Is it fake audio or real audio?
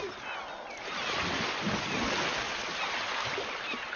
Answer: real